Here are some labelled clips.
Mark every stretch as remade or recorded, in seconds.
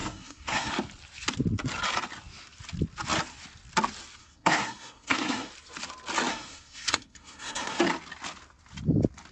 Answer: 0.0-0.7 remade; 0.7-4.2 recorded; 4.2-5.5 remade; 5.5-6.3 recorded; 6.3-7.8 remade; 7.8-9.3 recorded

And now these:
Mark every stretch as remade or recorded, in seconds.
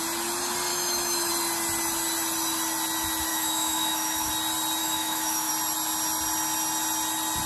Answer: 0.0-0.7 recorded; 0.7-1.3 remade; 1.3-3.3 recorded; 3.3-4.3 remade; 4.3-4.8 recorded; 4.8-5.5 remade; 5.5-7.5 recorded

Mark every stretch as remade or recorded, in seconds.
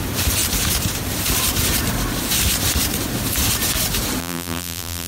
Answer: 0.0-4.2 recorded; 4.2-5.1 remade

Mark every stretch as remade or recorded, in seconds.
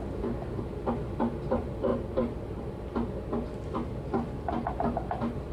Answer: 0.0-5.5 recorded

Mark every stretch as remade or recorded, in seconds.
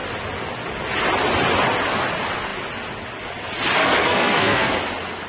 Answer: 0.0-3.8 recorded; 3.8-4.7 remade; 4.7-5.3 recorded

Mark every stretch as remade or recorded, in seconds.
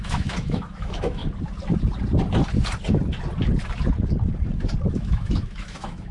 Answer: 0.0-1.2 remade; 1.2-4.9 recorded; 4.9-6.1 remade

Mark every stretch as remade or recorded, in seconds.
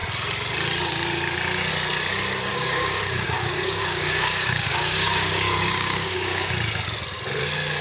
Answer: 0.0-2.5 recorded; 2.5-6.5 remade; 6.5-7.8 recorded